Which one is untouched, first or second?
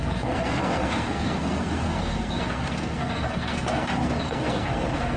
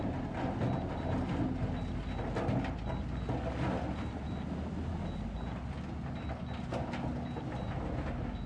second